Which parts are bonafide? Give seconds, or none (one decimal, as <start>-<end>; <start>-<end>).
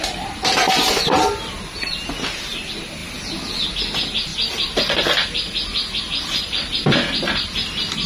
0.0-8.1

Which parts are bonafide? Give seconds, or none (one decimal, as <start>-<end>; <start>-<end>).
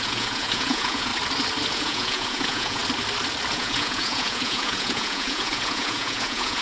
1.1-1.7; 2.8-3.5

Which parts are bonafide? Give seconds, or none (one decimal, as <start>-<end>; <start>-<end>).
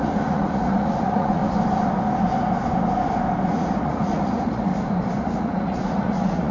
1.4-3.4; 4.7-5.2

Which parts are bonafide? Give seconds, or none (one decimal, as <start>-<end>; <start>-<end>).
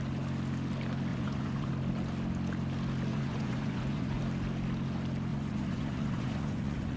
0.0-1.1; 1.7-3.1; 4.2-5.3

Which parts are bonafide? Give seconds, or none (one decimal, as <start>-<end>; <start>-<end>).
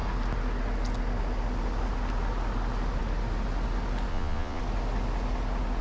0.0-4.1; 4.6-5.8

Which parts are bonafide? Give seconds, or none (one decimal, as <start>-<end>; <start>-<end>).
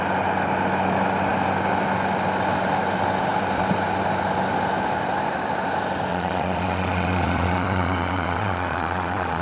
0.0-6.1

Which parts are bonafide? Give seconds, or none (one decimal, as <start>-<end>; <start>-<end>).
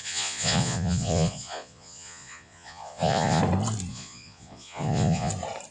3.4-3.9; 5.3-5.7